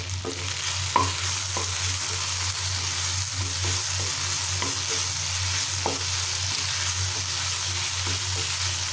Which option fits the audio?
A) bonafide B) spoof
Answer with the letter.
A